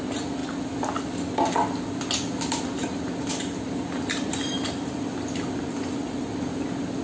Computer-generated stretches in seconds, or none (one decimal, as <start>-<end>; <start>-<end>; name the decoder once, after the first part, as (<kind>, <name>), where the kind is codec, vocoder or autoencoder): none